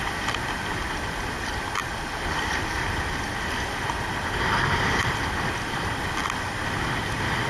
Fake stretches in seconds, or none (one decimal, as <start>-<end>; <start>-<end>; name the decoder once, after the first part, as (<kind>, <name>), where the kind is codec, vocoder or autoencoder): 1.8-5.3 (vocoder, BigVGAN v2)